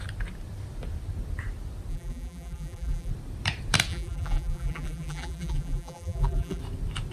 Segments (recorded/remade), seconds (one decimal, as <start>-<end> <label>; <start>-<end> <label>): 0.0-1.9 recorded; 1.9-3.1 remade; 3.1-3.9 recorded; 3.9-6.6 remade; 6.6-7.1 recorded